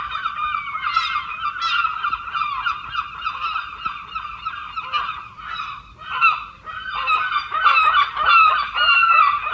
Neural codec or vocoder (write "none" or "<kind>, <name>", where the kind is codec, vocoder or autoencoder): none